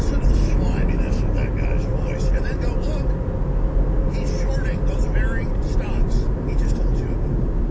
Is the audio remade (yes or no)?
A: no